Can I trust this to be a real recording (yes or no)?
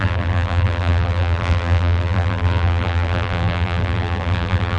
no